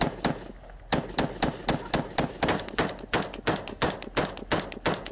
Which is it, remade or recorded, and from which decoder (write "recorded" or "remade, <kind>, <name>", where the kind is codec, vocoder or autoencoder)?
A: recorded